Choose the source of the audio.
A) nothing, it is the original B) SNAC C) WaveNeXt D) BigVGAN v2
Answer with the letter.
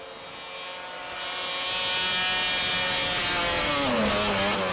A